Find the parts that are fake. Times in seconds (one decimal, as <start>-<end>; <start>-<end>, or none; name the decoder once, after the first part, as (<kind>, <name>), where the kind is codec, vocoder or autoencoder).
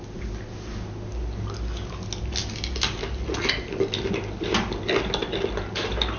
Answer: none